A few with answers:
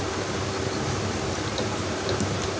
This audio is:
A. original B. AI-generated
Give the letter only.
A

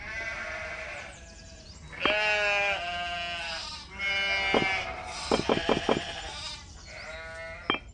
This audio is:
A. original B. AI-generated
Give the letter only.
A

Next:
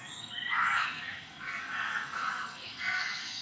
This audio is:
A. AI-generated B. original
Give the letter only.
A